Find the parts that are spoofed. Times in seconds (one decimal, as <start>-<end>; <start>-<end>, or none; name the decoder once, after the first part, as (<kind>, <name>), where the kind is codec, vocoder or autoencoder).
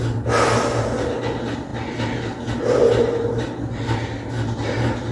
none